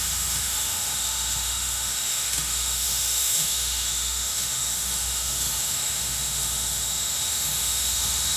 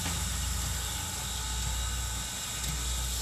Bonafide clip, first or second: second